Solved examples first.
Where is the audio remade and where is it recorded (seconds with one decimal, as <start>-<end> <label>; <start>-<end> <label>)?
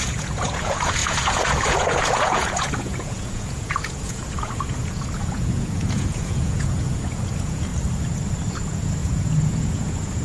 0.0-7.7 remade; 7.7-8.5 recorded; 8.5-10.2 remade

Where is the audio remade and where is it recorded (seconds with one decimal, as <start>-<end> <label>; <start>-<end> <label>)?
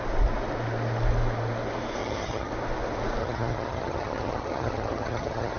0.0-2.0 recorded; 2.0-2.5 remade; 2.5-3.2 recorded; 3.2-5.6 remade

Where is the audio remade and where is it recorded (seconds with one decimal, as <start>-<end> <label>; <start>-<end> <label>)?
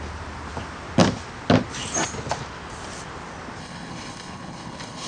0.0-3.6 recorded; 3.6-5.1 remade